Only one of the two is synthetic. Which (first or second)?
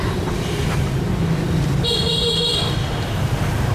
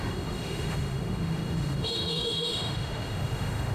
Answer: second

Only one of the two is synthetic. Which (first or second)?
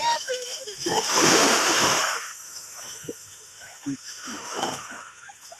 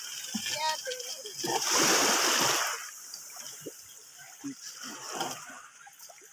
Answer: first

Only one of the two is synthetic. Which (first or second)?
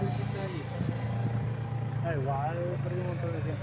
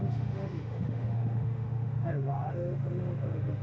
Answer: second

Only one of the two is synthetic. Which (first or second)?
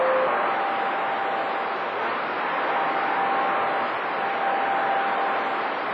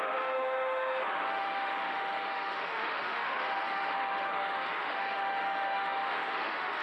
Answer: second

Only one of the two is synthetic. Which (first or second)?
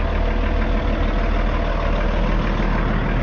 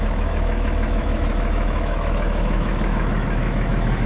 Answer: second